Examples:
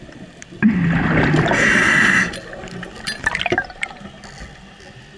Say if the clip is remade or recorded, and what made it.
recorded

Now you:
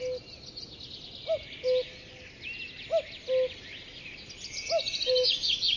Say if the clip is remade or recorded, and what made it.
recorded